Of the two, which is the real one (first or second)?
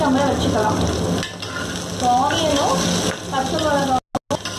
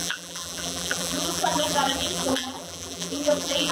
first